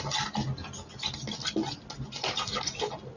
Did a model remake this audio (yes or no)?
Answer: no